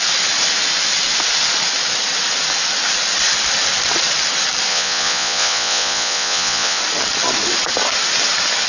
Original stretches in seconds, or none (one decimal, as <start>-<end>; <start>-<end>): 0.0-4.7; 6.8-8.7